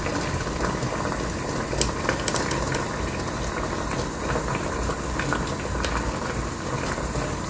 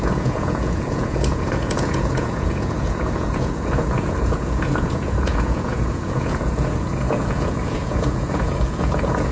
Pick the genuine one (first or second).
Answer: first